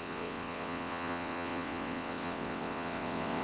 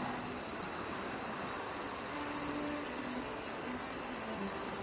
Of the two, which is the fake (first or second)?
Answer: first